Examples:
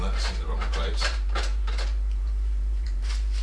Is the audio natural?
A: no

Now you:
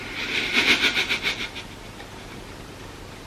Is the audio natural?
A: no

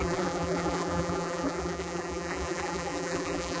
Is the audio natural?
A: no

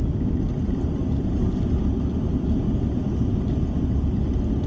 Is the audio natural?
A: no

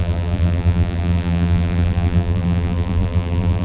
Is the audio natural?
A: no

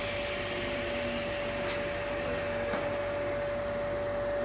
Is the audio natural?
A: yes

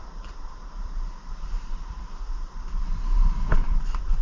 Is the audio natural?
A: no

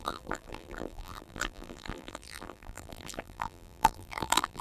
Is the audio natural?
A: no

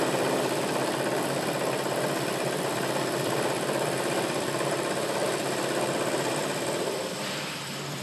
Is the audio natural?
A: no